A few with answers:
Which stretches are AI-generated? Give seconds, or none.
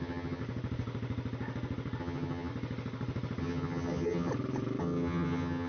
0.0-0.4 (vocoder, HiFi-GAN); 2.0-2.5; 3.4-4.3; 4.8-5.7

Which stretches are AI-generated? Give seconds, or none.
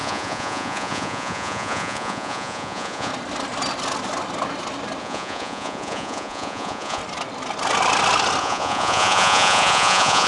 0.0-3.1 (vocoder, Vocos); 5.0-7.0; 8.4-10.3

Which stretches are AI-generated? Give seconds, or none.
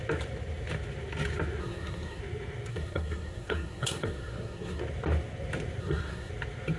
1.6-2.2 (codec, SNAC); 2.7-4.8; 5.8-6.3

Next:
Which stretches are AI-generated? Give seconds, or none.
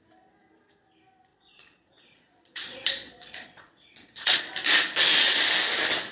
1.3-4.4 (vocoder, Vocos)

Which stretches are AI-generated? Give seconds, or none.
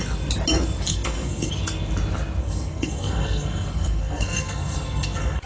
0.9-1.5 (codec, SNAC); 2.4-5.5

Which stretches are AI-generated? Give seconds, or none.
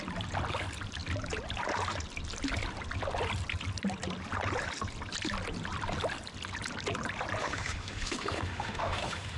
7.4-9.4 (autoencoder, DAC-VAE)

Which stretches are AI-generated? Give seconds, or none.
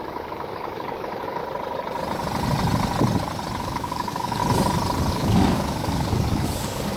0.0-1.4 (codec, DAC); 3.6-4.4; 5.1-7.0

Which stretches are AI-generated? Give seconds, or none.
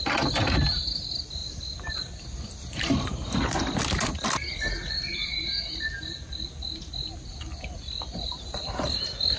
none